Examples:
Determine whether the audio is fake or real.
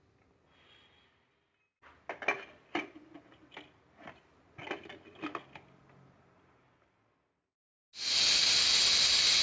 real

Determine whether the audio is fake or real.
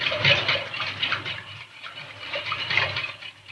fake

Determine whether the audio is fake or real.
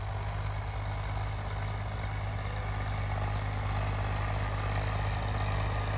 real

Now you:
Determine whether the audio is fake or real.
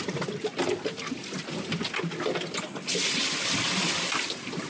real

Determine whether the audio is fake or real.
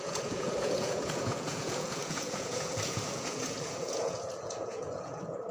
fake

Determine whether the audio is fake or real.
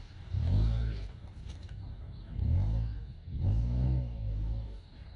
fake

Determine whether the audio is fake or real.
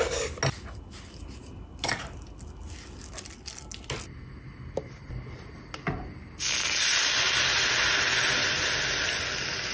real